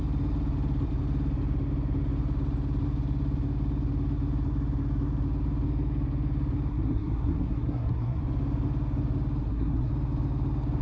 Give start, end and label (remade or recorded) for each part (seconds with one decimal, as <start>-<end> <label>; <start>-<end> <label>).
0.0-6.7 recorded; 6.7-8.2 remade; 8.2-9.4 recorded; 9.4-9.9 remade; 9.9-10.8 recorded